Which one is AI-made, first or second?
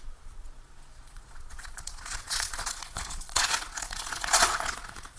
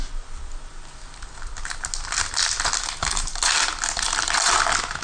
first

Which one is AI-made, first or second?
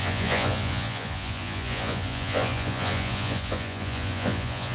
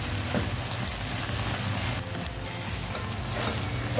first